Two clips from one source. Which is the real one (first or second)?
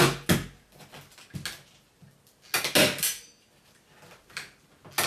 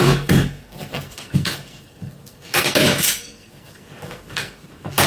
first